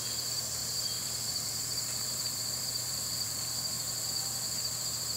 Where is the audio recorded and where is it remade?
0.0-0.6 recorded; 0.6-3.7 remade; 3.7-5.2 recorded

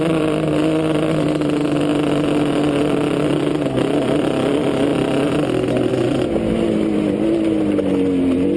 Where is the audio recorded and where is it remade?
0.0-8.6 recorded

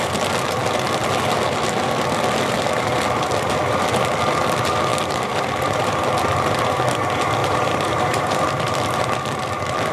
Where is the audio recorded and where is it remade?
0.0-7.4 recorded; 7.4-8.4 remade; 8.4-9.9 recorded

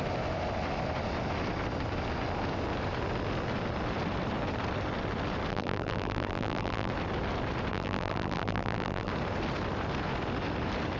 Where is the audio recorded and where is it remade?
0.0-5.5 recorded; 5.5-6.9 remade; 6.9-7.7 recorded; 7.7-9.1 remade; 9.1-11.0 recorded

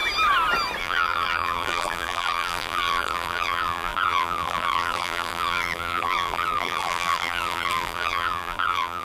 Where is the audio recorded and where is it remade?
0.0-0.8 recorded; 0.8-9.0 remade

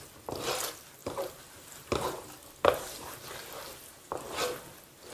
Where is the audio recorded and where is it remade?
0.0-1.0 recorded; 1.0-4.1 remade; 4.1-5.1 recorded

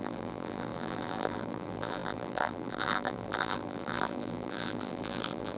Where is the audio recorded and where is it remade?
0.0-5.6 remade

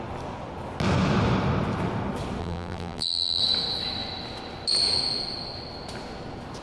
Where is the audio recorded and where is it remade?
0.0-2.4 recorded; 2.4-3.4 remade; 3.4-6.6 recorded